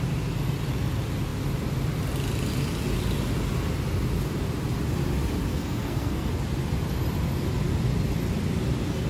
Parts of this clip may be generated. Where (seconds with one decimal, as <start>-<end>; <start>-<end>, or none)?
5.5-6.3